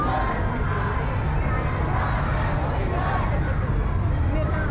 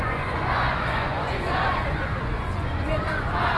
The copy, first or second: second